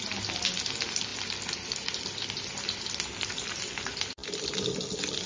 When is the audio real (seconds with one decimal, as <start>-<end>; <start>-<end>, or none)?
0.0-5.3